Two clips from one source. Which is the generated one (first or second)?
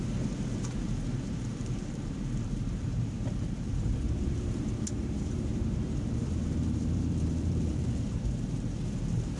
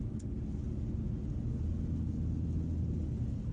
first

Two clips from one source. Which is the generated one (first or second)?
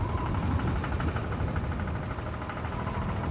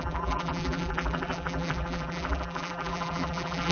second